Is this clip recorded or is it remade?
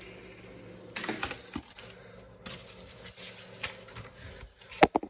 recorded